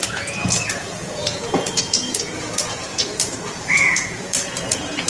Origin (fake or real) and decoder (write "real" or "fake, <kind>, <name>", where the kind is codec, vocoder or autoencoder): fake, vocoder, Vocos